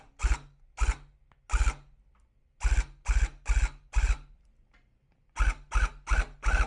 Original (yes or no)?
yes